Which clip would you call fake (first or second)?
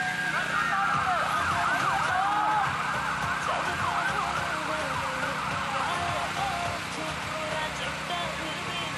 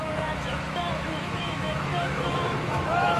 second